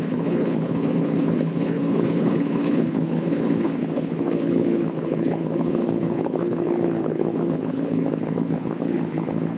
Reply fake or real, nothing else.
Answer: fake